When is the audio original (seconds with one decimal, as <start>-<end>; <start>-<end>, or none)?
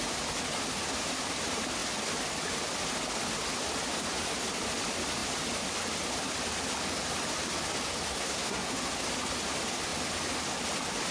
0.0-8.1; 8.9-11.1